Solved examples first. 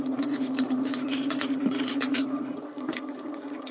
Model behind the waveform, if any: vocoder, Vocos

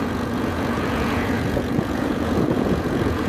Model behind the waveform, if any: vocoder, Vocos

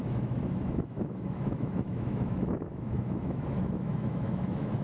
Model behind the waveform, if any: autoencoder, DAC-VAE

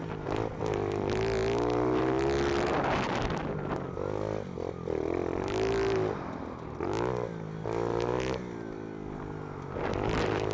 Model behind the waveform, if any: none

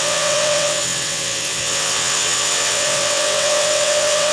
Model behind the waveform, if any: vocoder, WaveNeXt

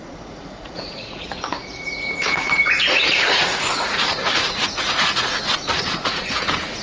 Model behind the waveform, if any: vocoder, Vocos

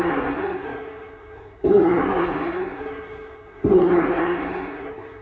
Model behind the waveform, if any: codec, SNAC